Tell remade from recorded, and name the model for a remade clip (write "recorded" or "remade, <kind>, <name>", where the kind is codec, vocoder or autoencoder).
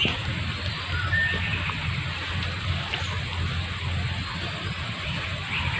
recorded